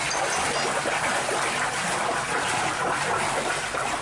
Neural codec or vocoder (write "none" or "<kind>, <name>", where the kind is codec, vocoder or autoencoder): none